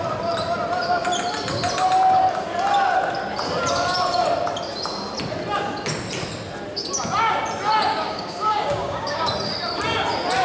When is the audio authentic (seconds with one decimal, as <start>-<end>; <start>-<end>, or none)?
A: 0.0-7.9; 9.3-10.4